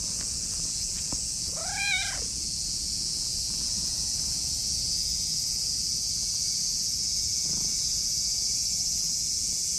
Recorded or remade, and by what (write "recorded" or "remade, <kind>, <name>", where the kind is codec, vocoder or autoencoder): remade, vocoder, Vocos